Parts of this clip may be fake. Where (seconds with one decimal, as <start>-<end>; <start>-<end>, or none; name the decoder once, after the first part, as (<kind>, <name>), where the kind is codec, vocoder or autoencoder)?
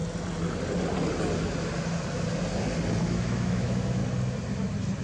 3.0-4.0 (autoencoder, DAC-VAE)